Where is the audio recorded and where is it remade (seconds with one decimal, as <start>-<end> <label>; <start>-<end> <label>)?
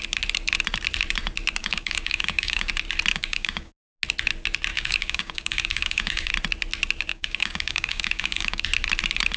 0.0-1.6 recorded; 1.6-2.7 remade; 2.7-3.1 recorded; 3.1-3.7 remade; 3.7-4.7 recorded; 4.7-6.3 remade; 6.3-7.1 recorded; 7.1-8.6 remade; 8.6-9.4 recorded